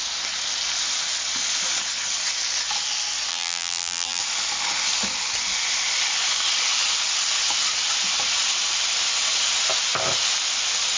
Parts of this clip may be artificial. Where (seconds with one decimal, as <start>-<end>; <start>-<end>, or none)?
3.3-4.2